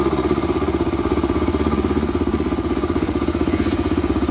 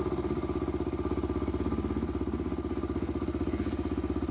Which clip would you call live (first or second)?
second